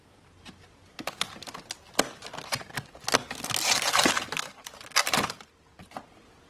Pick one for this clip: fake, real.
real